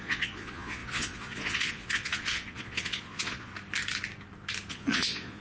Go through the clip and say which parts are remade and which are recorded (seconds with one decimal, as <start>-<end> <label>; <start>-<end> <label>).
0.0-3.5 remade; 3.5-4.7 recorded; 4.7-5.4 remade